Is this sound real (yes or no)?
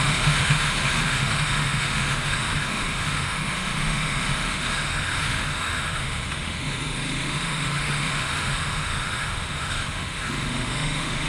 no